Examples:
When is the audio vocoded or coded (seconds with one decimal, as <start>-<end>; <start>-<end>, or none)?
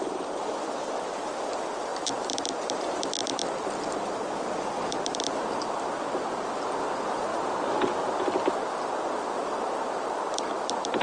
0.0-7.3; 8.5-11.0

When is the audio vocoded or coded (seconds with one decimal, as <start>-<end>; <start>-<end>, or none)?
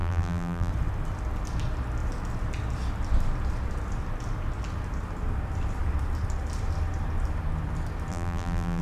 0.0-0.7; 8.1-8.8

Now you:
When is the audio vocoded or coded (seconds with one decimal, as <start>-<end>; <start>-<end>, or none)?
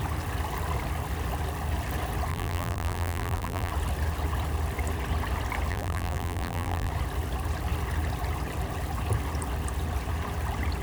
2.3-3.7; 5.7-6.9